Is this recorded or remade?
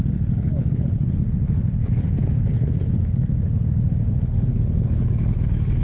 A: remade